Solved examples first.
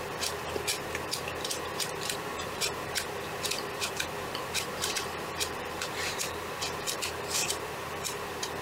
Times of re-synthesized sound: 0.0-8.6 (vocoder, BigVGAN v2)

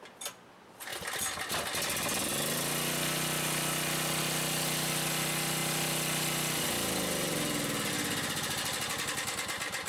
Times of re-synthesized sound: none

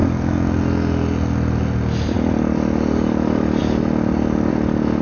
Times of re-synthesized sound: none

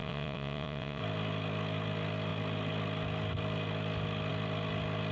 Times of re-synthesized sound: 0.0-1.0 (vocoder, WaveNeXt)